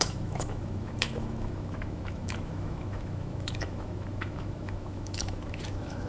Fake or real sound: fake